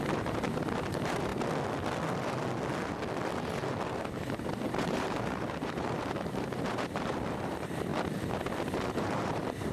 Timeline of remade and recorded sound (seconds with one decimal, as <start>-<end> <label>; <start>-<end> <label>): 0.0-1.3 remade; 1.3-3.9 recorded; 3.9-7.9 remade; 7.9-8.6 recorded; 8.6-9.7 remade